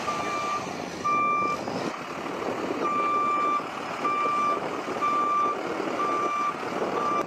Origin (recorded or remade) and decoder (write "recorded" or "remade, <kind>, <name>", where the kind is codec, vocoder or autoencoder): recorded